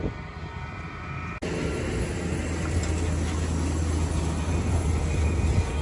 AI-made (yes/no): no